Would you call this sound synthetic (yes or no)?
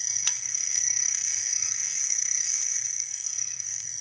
yes